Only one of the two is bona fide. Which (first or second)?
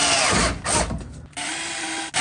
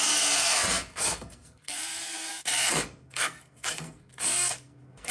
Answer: first